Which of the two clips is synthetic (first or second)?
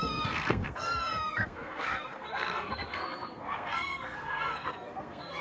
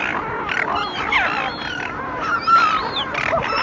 first